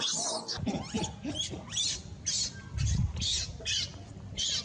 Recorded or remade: recorded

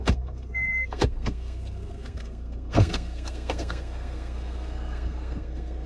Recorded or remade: remade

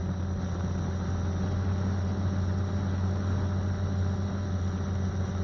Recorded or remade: recorded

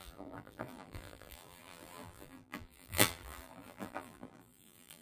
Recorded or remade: remade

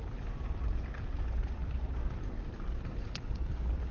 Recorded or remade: remade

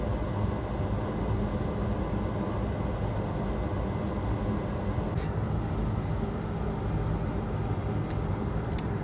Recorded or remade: recorded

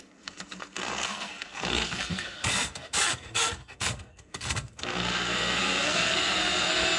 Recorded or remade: remade